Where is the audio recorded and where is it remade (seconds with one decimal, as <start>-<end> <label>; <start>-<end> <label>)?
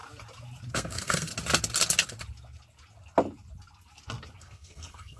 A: 0.0-0.7 recorded; 0.7-1.3 remade; 1.3-4.4 recorded; 4.4-5.2 remade